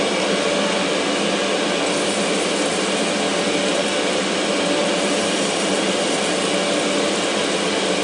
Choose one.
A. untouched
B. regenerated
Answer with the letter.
A